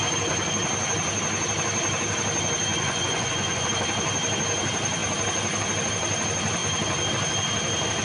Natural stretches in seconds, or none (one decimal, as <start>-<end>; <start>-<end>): 0.0-2.7; 3.7-8.0

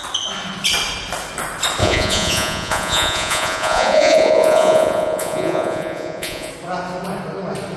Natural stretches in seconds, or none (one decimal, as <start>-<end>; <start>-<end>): 0.0-1.8; 6.5-7.8